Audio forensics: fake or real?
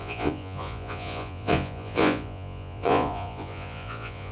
fake